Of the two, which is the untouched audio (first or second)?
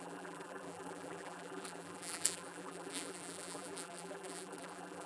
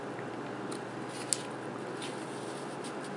second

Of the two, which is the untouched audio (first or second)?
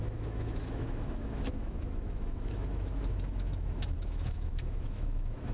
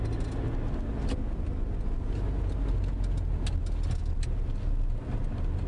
second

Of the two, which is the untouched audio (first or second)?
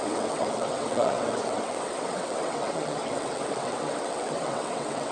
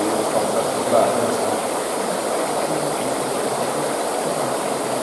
second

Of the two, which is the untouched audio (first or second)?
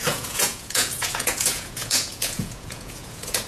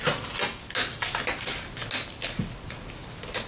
second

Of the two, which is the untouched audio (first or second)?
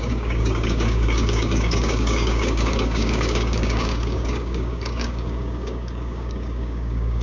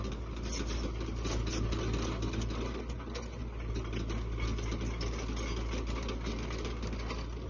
second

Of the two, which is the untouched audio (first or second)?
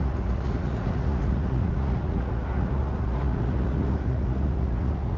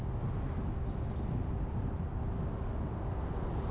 second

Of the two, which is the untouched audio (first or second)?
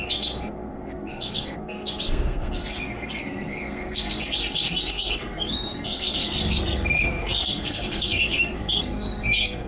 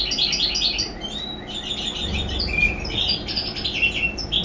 second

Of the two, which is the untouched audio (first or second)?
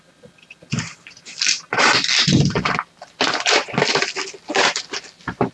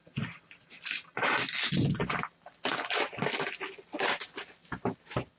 second